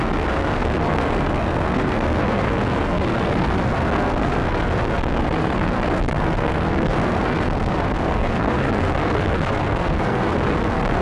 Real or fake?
fake